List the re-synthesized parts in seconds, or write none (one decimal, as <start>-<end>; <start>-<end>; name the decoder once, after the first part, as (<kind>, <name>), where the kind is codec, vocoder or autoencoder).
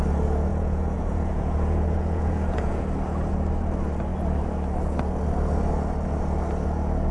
0.5-2.8 (vocoder, Vocos)